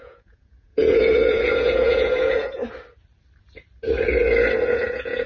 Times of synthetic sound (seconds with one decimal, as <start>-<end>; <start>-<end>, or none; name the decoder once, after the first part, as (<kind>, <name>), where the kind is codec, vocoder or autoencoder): 0.0-2.6 (vocoder, Vocos); 4.6-5.3

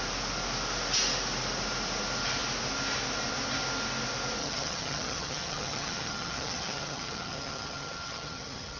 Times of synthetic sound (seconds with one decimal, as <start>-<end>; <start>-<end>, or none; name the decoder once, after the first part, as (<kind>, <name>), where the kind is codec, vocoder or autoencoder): 4.4-8.8 (vocoder, HiFi-GAN)

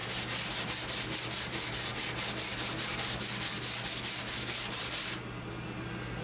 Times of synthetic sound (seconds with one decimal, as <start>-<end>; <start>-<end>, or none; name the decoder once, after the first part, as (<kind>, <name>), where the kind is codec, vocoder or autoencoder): none

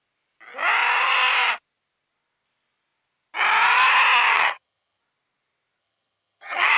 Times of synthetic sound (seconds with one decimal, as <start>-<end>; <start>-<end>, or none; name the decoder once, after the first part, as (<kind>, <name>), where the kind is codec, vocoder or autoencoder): 4.3-5.0 (vocoder, HiFi-GAN); 5.8-6.8

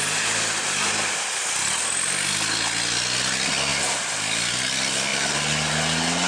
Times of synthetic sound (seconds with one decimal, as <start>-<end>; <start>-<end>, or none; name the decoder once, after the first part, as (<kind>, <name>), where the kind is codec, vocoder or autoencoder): none